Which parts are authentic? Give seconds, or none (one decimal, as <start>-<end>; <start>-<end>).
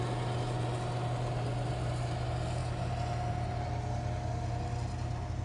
0.0-5.4